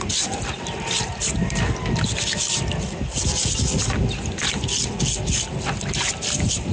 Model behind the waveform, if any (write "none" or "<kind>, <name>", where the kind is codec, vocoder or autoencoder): none